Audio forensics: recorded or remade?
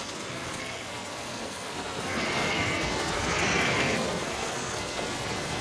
remade